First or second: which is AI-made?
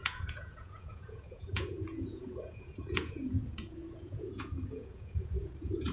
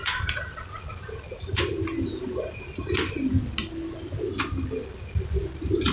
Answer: first